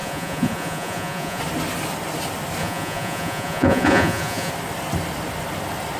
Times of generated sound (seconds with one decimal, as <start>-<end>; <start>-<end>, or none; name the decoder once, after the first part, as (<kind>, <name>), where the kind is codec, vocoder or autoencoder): 0.0-1.4 (vocoder, Vocos); 2.6-4.5